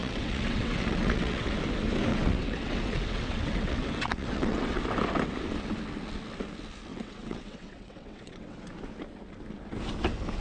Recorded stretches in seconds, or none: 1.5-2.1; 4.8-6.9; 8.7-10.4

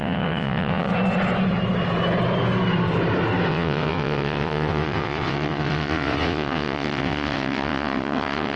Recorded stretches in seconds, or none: 0.9-3.5